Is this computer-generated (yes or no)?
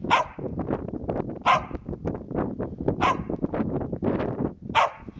no